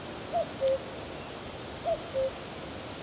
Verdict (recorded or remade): recorded